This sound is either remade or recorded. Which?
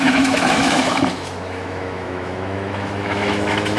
remade